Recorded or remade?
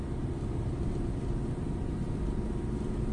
recorded